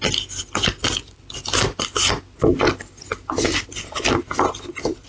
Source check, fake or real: real